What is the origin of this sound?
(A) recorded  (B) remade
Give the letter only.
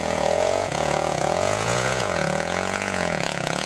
B